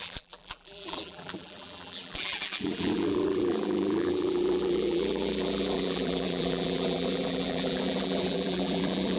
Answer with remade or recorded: remade